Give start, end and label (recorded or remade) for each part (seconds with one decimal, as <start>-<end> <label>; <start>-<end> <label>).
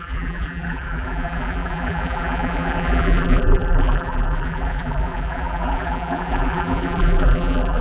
0.0-7.8 remade